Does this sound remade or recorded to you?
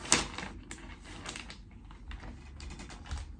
recorded